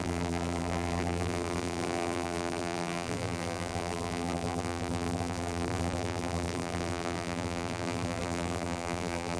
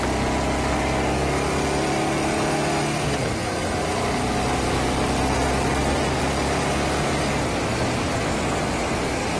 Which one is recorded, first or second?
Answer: second